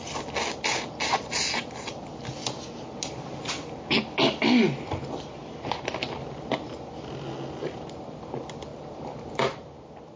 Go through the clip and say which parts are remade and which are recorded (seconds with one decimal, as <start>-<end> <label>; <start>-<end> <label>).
0.0-10.2 recorded